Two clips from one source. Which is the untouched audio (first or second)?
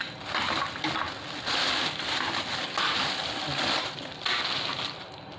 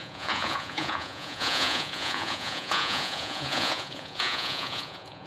first